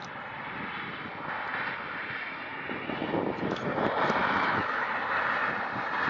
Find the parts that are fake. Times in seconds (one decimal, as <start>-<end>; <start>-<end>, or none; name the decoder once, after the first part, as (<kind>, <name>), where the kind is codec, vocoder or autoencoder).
4.2-4.9 (autoencoder, DAC-VAE)